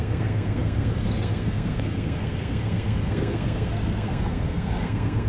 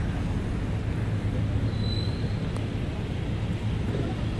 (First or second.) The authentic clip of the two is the second